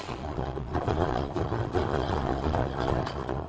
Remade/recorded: remade